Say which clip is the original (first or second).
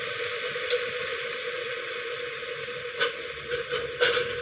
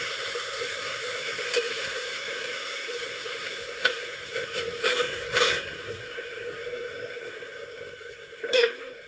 first